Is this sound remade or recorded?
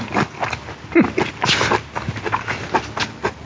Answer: recorded